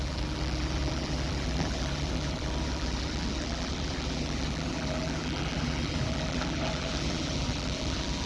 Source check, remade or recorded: remade